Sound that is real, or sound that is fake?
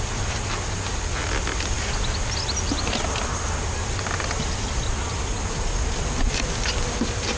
real